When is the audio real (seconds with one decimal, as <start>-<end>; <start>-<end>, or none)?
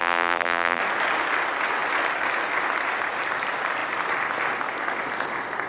0.8-5.7